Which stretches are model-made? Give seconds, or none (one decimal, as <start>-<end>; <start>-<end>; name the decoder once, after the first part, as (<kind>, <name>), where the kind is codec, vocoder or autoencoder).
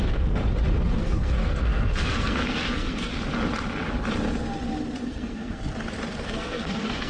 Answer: 0.0-0.4 (codec, SNAC); 1.0-3.1; 5.0-5.6; 6.2-7.1